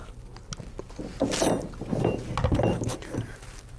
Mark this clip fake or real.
real